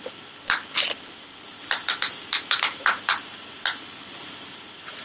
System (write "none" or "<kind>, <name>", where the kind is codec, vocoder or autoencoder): none